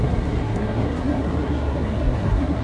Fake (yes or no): yes